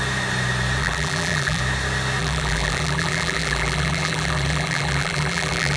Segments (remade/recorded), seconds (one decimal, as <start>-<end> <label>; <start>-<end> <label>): 0.0-0.8 recorded; 0.8-1.6 remade; 1.6-2.2 recorded; 2.2-5.8 remade